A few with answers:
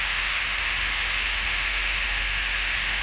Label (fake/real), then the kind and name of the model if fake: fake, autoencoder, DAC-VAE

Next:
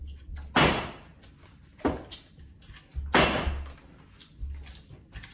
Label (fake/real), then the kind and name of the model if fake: real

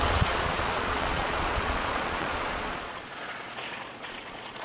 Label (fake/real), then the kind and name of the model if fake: fake, vocoder, Vocos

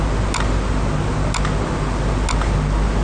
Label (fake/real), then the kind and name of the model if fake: real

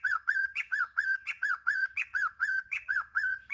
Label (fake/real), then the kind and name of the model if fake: fake, vocoder, Vocos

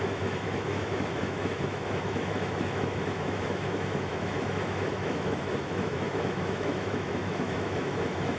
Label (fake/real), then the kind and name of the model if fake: fake, autoencoder, DAC-VAE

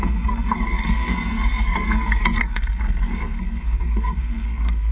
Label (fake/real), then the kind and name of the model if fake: fake, codec, SNAC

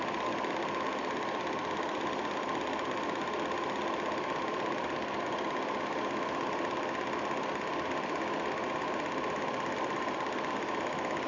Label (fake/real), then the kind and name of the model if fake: real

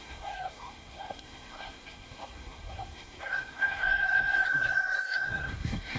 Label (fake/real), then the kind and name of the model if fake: fake, codec, SNAC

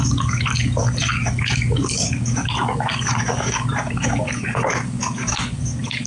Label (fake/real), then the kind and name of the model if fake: fake, codec, DAC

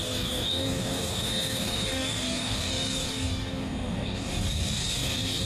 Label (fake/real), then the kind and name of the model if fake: fake, codec, DAC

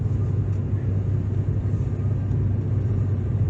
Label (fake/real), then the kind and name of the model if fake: real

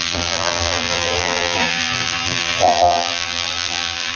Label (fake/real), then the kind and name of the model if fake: fake, vocoder, BigVGAN v2